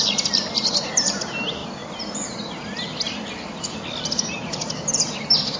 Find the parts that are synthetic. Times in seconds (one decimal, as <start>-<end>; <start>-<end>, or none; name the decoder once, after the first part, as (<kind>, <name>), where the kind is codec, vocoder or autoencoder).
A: none